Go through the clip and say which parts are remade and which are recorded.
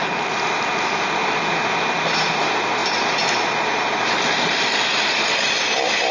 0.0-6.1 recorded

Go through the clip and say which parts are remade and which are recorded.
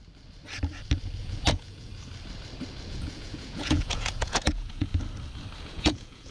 0.0-1.2 recorded; 1.2-1.9 remade; 1.9-2.9 recorded; 2.9-4.9 remade; 4.9-5.7 recorded; 5.7-6.3 remade